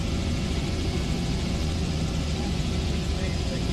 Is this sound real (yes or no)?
no